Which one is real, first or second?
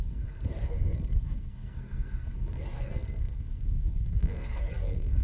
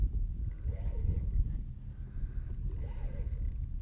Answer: second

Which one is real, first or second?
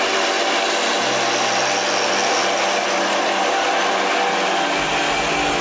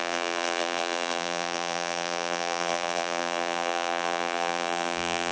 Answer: first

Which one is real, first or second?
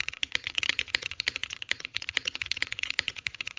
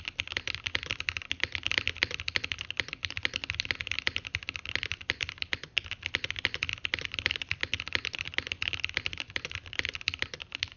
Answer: second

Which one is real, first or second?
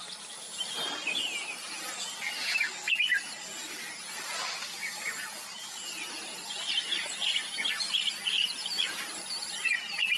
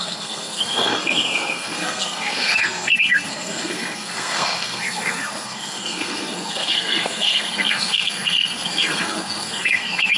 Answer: first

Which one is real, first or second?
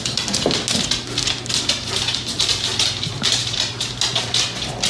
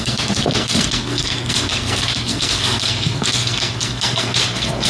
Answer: first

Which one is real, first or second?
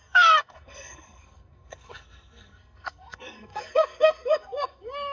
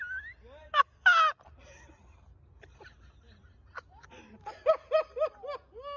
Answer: second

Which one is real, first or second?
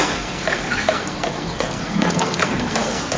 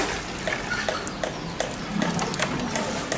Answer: second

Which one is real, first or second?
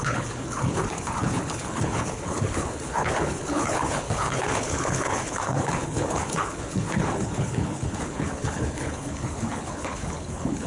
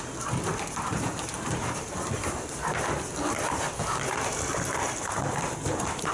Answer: second